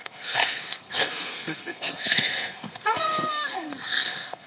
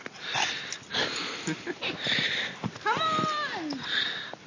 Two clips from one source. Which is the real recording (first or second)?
second